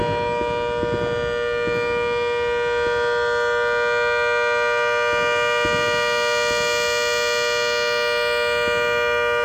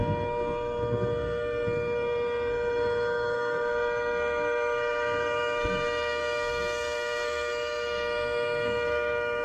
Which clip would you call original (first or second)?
first